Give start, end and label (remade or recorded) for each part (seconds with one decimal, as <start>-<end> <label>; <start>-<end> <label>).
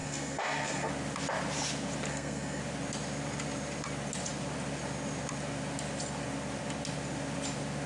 0.0-0.9 remade; 0.9-2.1 recorded; 2.1-2.6 remade; 2.6-7.9 recorded